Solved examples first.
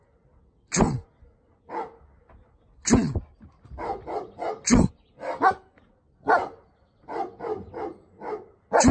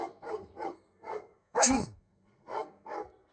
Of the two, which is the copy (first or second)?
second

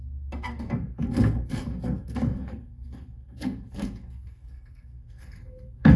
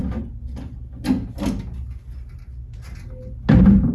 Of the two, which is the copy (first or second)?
first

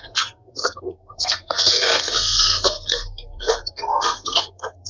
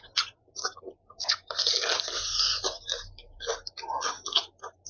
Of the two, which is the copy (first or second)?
first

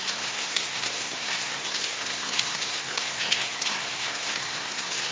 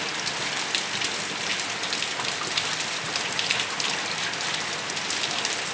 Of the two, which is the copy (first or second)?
first